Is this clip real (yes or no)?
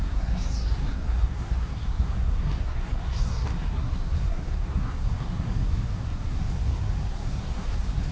no